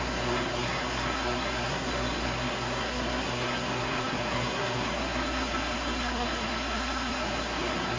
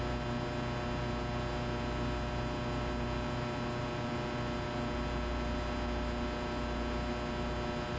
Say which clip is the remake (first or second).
first